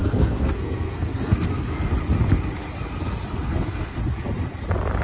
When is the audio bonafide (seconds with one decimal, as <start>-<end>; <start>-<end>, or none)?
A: 1.9-3.4; 4.0-5.0